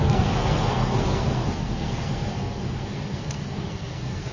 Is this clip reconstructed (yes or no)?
yes